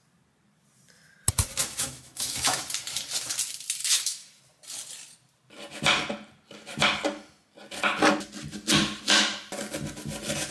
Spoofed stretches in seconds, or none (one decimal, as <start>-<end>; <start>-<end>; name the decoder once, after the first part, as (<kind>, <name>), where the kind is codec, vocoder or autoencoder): 1.6-2.6 (autoencoder, DAC-VAE); 3.8-4.4